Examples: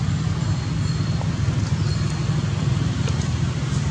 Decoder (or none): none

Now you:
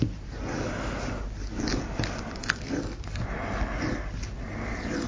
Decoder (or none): none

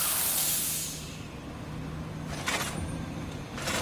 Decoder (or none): none